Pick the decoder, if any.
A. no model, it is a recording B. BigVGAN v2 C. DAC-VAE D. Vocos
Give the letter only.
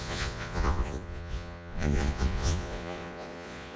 D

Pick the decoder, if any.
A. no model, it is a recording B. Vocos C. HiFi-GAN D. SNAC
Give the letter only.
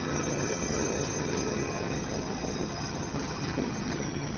C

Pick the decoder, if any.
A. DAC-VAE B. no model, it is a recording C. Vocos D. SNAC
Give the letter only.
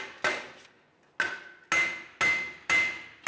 B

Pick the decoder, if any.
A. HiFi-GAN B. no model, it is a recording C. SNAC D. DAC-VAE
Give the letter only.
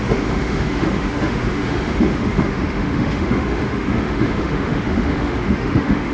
D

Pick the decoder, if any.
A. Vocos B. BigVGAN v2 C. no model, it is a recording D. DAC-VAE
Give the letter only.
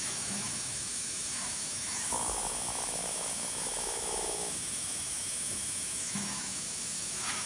D